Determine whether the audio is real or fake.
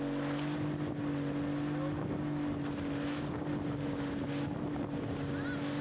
real